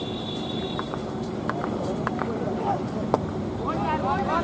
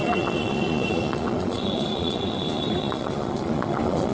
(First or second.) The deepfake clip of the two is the second